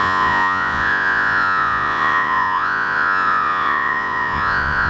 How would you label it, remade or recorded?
remade